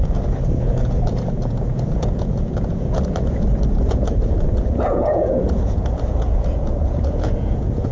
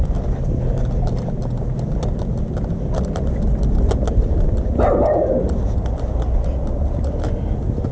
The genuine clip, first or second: second